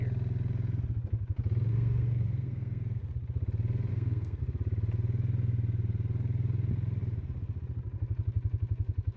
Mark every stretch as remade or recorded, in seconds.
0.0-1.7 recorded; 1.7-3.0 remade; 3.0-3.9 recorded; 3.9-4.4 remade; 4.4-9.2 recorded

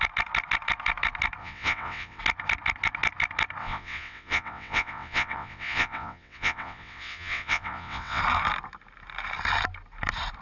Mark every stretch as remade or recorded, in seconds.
0.0-1.4 recorded; 1.4-2.2 remade; 2.2-3.6 recorded; 3.6-8.2 remade; 8.2-10.4 recorded

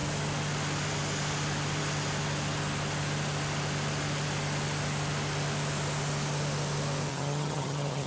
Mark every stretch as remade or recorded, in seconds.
0.0-7.1 recorded; 7.1-8.1 remade